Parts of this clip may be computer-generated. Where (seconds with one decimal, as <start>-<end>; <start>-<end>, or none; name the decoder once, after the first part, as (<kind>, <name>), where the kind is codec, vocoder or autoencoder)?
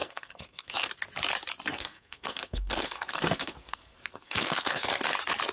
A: 0.0-0.9 (codec, SNAC); 1.7-5.0